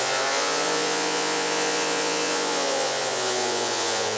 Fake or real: fake